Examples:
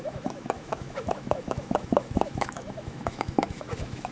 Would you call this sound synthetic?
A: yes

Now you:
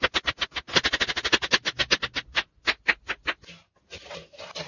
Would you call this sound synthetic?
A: no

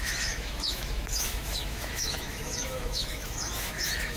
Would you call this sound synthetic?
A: yes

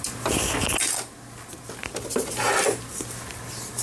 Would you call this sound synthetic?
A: no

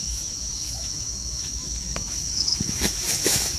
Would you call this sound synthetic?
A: yes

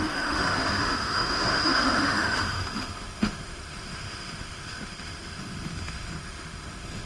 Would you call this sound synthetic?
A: yes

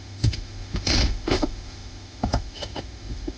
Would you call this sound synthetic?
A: yes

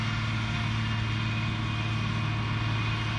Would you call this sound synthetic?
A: no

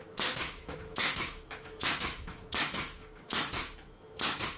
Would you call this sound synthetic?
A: yes